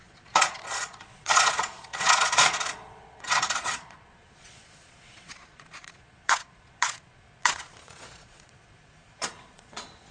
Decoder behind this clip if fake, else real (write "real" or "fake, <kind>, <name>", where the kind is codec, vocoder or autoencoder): fake, vocoder, Vocos